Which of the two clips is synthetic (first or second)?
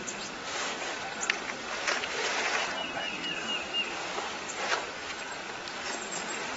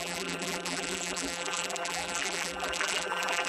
second